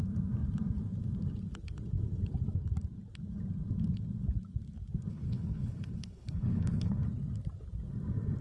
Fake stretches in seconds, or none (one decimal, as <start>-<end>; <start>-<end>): 5.1-6.9